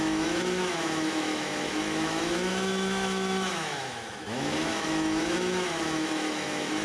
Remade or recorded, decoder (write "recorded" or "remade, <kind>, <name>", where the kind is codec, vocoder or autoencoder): remade, autoencoder, DAC-VAE